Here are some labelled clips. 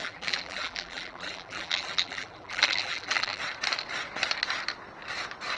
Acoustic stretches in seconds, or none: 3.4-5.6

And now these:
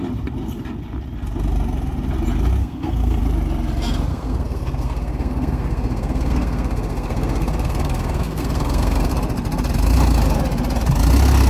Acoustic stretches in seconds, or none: 0.0-2.6; 3.2-4.1; 9.1-11.5

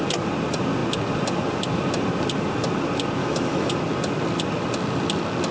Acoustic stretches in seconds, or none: 0.0-3.2; 3.7-5.5

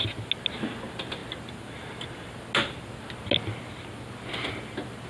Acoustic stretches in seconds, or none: 0.0-5.1

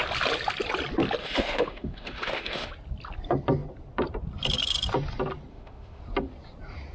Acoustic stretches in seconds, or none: 0.0-1.2; 2.7-5.5; 6.0-6.9

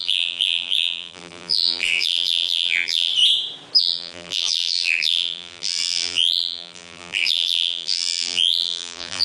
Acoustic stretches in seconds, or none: 3.1-3.8

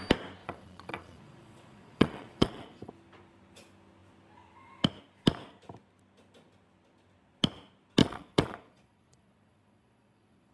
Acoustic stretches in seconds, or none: 0.0-0.4; 2.9-8.0

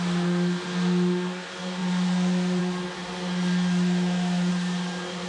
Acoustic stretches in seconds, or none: 0.0-5.3